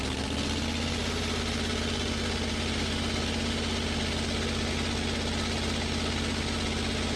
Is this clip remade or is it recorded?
recorded